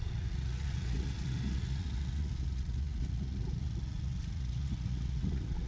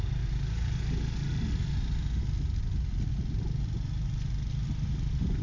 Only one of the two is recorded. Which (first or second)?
second